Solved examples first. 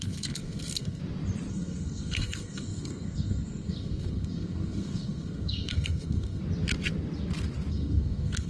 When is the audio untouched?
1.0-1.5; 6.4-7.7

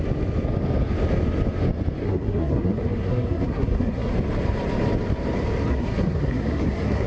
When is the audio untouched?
0.0-2.0; 4.1-5.7